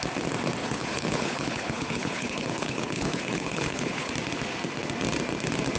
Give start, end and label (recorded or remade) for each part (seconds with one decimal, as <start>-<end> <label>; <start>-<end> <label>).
0.0-0.6 recorded; 0.6-4.1 remade; 4.1-5.8 recorded